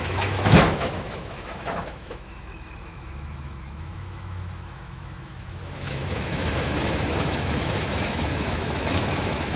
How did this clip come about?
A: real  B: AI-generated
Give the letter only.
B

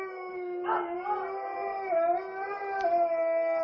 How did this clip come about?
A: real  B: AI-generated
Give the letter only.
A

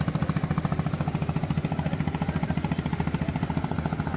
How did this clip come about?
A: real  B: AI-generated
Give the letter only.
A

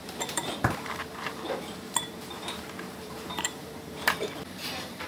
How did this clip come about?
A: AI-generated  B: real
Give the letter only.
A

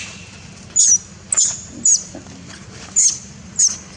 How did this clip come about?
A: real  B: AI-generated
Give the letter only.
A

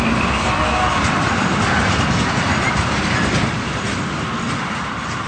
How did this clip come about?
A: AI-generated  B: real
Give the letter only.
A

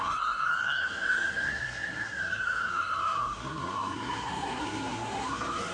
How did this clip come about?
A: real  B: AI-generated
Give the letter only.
B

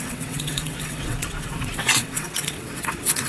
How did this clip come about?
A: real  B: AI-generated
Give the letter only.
B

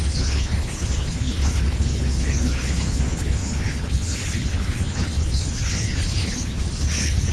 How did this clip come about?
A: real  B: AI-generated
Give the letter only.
B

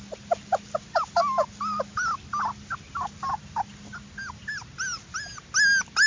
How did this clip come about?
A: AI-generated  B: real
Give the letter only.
B